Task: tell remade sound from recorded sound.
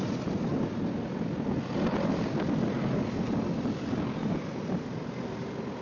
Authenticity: recorded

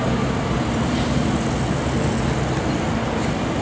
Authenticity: recorded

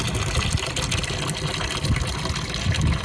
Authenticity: recorded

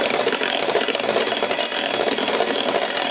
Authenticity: remade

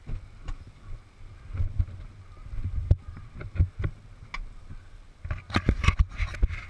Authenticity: recorded